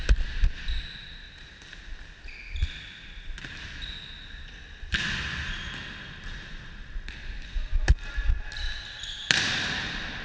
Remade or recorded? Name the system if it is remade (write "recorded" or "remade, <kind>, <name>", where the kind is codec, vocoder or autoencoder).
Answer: recorded